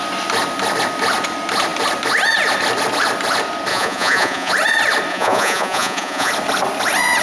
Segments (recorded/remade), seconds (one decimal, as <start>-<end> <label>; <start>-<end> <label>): 0.0-3.7 recorded; 3.7-4.5 remade; 4.5-5.1 recorded; 5.1-6.3 remade; 6.3-7.2 recorded